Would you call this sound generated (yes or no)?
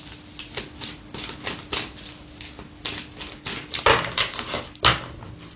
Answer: no